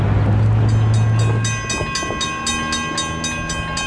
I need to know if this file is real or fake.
real